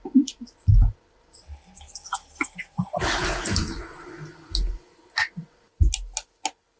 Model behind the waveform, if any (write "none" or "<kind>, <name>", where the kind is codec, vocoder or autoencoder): none